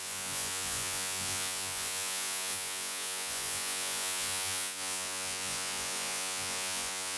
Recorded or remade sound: remade